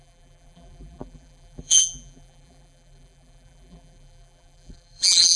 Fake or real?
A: fake